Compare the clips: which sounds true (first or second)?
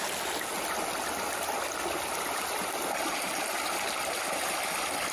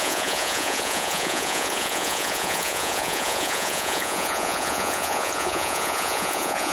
first